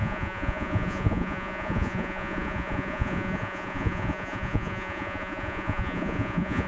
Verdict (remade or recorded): remade